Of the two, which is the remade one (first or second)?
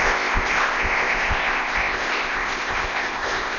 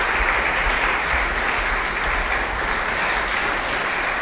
first